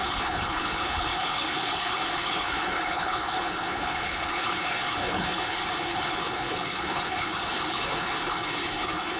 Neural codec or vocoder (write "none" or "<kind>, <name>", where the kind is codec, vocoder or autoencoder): codec, HILCodec